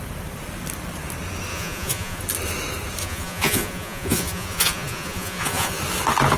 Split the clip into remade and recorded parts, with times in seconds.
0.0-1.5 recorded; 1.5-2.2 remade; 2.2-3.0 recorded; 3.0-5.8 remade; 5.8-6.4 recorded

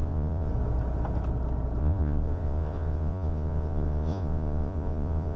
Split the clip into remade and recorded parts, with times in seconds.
0.0-0.5 remade; 0.5-1.8 recorded; 1.8-5.4 remade

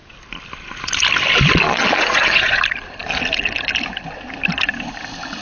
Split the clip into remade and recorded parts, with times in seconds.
0.0-1.6 recorded; 1.6-2.6 remade; 2.6-5.4 recorded

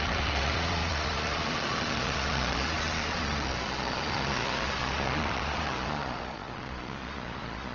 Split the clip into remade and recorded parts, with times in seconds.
0.0-7.7 remade

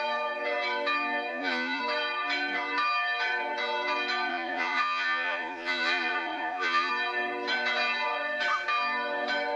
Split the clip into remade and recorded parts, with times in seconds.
0.0-1.3 recorded; 1.3-1.8 remade; 1.8-4.3 recorded; 4.3-6.9 remade; 6.9-9.6 recorded

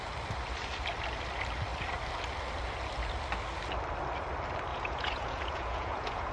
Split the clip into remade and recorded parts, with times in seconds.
0.0-4.7 recorded; 4.7-6.3 remade

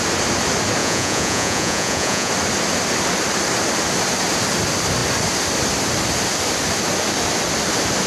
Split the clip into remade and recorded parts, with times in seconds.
0.0-0.8 recorded; 0.8-2.3 remade; 2.3-8.1 recorded